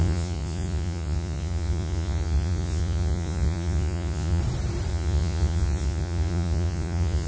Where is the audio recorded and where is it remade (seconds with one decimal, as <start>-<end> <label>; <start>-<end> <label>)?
0.0-4.4 remade; 4.4-4.9 recorded; 4.9-7.3 remade